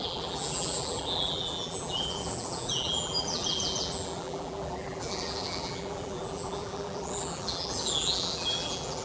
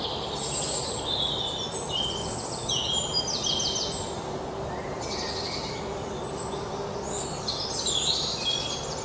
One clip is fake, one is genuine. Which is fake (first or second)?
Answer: first